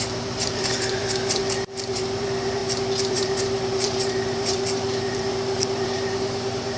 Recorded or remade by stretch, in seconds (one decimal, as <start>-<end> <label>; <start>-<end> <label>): 0.0-1.4 remade; 1.4-1.9 recorded; 1.9-2.6 remade; 2.6-3.1 recorded; 3.1-6.8 remade